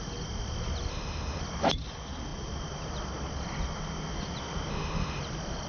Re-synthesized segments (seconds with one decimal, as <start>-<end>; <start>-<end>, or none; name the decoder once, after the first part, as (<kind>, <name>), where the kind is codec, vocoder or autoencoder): 0.9-1.4 (autoencoder, DAC-VAE); 4.7-5.2